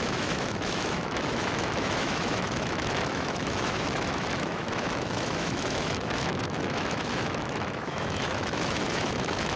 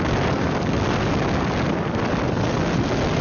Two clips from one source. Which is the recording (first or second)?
second